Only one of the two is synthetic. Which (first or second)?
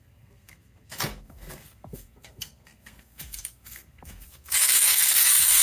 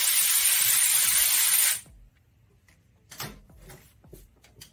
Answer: first